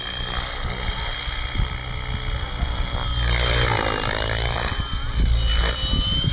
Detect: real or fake real